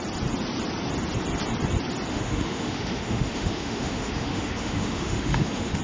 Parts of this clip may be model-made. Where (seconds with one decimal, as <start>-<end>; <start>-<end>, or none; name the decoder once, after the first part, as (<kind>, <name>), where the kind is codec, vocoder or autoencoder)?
2.1-5.8 (autoencoder, DAC-VAE)